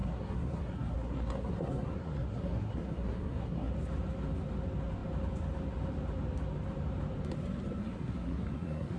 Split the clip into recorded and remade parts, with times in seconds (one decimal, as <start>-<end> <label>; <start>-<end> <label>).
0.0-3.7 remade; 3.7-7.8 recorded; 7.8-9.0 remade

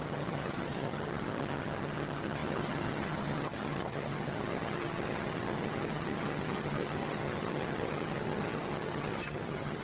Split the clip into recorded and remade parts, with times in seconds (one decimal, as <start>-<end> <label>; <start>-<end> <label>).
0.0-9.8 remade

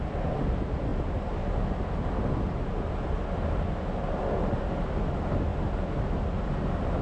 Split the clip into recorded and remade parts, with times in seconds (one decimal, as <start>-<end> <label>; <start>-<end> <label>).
0.0-7.0 recorded